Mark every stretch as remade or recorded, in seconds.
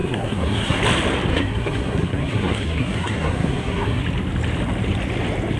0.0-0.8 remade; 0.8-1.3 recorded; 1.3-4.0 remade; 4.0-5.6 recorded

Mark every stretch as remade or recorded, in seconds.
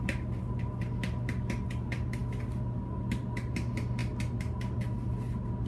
0.0-5.7 recorded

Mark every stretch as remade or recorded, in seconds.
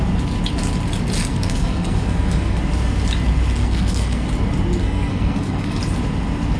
0.0-1.3 recorded; 1.3-2.6 remade; 2.6-3.6 recorded; 3.6-4.3 remade; 4.3-4.8 recorded; 4.8-5.8 remade; 5.8-6.6 recorded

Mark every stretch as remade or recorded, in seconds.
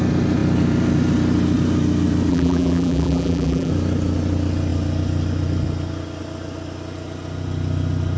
0.0-2.3 recorded; 2.3-3.7 remade; 3.7-8.2 recorded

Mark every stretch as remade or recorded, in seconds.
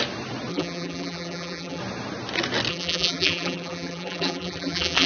0.0-0.5 recorded; 0.5-1.8 remade; 1.8-2.7 recorded; 2.7-5.1 remade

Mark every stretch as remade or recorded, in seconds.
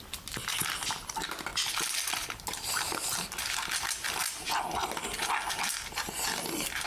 0.0-6.9 recorded